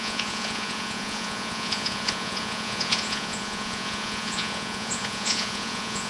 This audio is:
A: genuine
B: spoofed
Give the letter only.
B